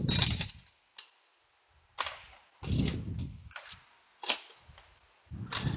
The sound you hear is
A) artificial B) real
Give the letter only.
B